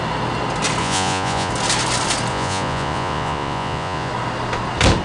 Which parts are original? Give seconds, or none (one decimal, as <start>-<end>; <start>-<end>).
0.0-0.8; 1.5-2.3; 4.1-5.0